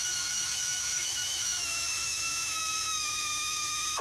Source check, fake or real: fake